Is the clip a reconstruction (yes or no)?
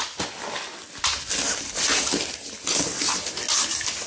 no